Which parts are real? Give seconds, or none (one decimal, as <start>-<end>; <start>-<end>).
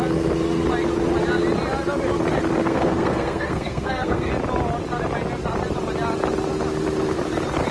0.0-2.6; 4.3-7.7